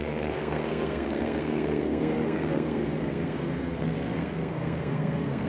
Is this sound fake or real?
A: fake